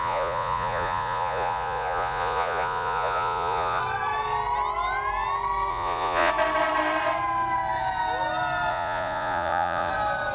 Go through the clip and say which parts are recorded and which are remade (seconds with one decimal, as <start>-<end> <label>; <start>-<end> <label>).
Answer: 0.0-3.8 remade; 3.8-5.7 recorded; 5.7-6.3 remade; 6.3-8.7 recorded; 8.7-9.9 remade; 9.9-10.3 recorded